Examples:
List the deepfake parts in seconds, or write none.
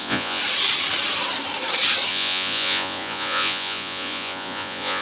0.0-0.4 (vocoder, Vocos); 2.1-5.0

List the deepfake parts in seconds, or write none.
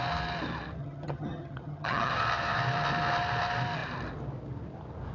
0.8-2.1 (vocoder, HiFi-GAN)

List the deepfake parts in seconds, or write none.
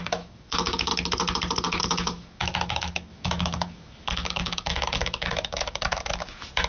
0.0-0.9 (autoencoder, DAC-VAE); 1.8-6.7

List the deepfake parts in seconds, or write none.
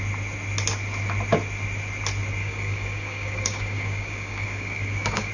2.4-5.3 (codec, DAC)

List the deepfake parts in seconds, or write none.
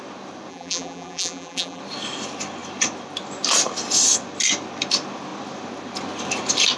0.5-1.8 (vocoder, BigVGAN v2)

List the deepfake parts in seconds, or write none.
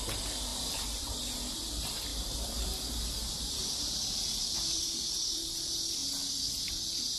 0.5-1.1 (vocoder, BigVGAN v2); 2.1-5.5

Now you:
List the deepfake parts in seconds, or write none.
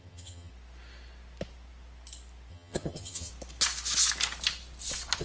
0.0-0.5 (vocoder, HiFi-GAN); 2.5-3.3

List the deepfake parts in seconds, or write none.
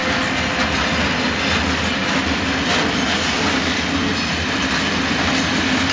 none